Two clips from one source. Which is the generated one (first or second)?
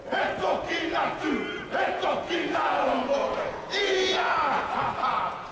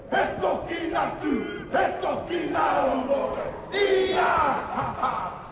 first